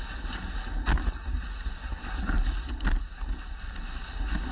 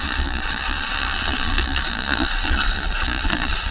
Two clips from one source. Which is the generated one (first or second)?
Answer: second